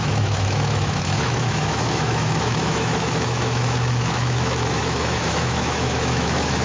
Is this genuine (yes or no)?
no